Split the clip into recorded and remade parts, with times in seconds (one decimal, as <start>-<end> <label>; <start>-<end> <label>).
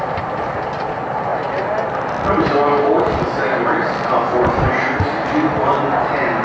0.0-6.4 recorded